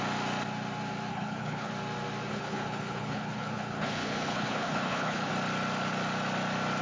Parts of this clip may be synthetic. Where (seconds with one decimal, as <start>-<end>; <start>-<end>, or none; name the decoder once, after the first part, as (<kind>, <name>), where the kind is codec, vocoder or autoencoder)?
1.1-1.7 (codec, HILCodec); 2.3-5.3